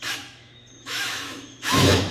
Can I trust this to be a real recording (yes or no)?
no